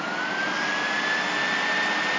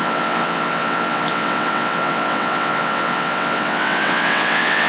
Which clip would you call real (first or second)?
first